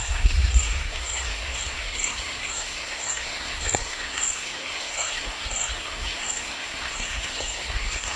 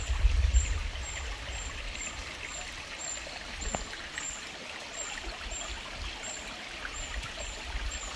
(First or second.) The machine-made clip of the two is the first